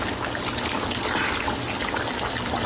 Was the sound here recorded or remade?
recorded